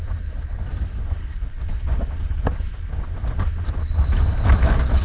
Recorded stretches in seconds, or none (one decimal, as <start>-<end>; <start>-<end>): 0.0-5.0

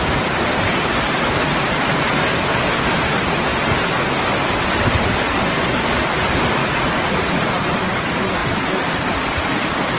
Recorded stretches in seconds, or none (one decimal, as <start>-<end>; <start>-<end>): 0.0-6.6; 7.5-10.0

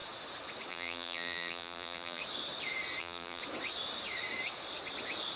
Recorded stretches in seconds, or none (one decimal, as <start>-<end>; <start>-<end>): 0.0-0.7; 2.2-3.0; 3.4-5.4

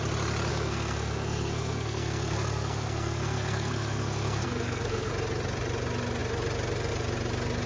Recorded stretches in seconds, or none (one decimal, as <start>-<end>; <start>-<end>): 0.0-0.5; 5.1-7.7

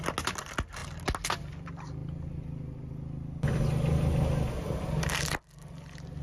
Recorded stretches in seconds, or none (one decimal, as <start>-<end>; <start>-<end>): 0.0-6.2